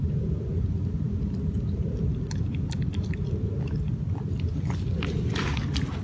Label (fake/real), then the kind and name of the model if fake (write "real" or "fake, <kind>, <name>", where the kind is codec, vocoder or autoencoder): real